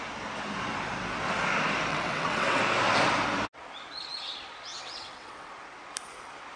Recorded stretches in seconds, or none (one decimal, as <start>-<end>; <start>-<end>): 0.0-1.9; 2.6-4.7; 5.5-6.6